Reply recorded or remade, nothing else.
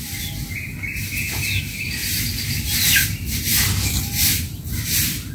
recorded